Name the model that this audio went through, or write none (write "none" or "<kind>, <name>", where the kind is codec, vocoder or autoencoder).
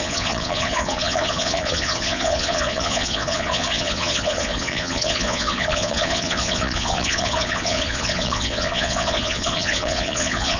vocoder, Vocos